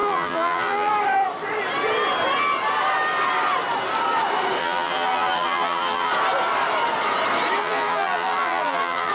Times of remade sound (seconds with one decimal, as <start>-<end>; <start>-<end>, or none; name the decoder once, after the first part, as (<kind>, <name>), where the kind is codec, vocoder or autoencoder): 0.0-0.9 (vocoder, BigVGAN v2); 4.6-6.1; 7.6-9.1